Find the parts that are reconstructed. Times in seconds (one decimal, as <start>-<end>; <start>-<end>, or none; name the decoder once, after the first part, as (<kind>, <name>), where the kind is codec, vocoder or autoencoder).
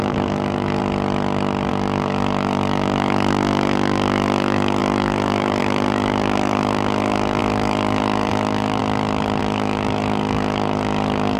0.0-0.8 (codec, DAC); 1.7-8.8; 9.4-11.4